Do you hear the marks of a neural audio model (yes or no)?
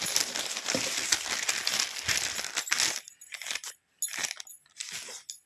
no